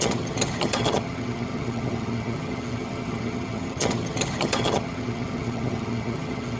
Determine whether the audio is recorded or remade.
remade